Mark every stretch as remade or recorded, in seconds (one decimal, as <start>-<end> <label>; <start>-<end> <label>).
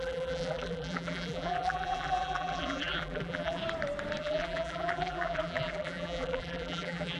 0.0-3.6 remade; 3.6-4.2 recorded; 4.2-7.2 remade